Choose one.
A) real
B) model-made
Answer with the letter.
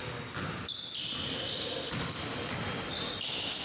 A